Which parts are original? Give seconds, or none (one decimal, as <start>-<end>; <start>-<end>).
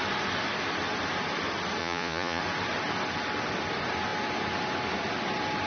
0.0-1.8; 2.4-5.7